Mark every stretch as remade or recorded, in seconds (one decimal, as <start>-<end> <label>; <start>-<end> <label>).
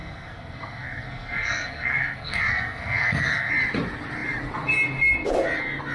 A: 0.0-3.5 remade; 3.5-5.9 recorded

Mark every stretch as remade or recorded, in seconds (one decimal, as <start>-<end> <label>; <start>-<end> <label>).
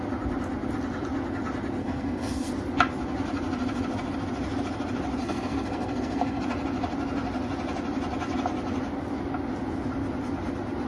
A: 0.0-1.8 recorded; 1.8-2.5 remade; 2.5-5.2 recorded; 5.2-6.4 remade; 6.4-10.9 recorded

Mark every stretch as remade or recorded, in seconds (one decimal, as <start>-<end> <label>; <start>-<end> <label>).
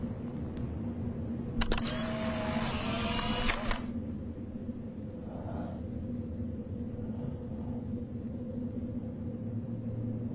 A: 0.0-10.3 recorded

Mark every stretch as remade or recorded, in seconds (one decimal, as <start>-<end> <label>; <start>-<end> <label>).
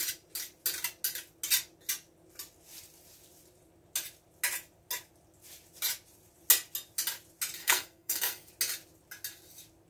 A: 0.0-7.6 recorded; 7.6-8.5 remade; 8.5-9.9 recorded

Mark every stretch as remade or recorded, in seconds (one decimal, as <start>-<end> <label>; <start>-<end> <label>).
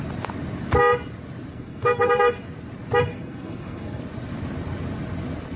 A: 0.0-1.5 recorded; 1.5-2.3 remade; 2.3-3.1 recorded; 3.1-4.0 remade; 4.0-5.6 recorded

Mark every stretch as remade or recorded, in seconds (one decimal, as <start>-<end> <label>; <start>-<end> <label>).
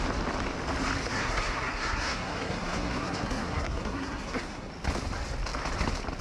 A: 0.0-1.1 recorded; 1.1-4.7 remade; 4.7-6.2 recorded